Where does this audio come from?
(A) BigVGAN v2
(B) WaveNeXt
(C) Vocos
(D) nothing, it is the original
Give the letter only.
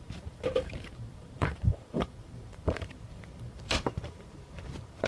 A